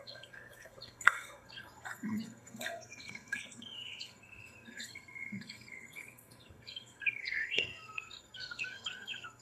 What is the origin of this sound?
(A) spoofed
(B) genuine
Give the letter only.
A